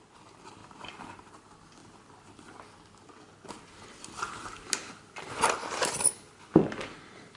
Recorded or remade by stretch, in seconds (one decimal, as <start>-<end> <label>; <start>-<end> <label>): 0.0-0.6 recorded; 0.6-1.3 remade; 1.3-7.4 recorded